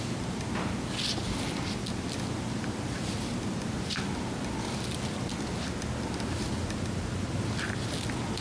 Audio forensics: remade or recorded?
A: recorded